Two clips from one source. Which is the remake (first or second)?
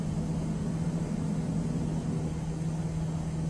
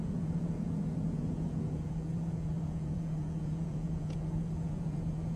second